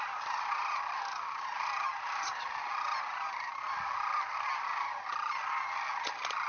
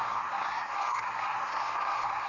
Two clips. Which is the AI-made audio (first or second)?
second